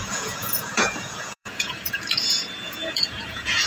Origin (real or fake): fake